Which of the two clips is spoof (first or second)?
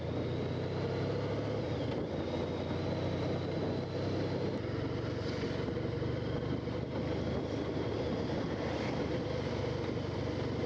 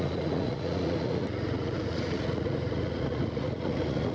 second